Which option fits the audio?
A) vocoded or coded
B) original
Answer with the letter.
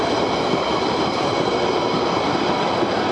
B